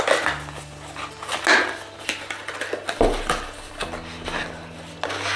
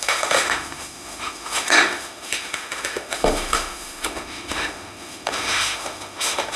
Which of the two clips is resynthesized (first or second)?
second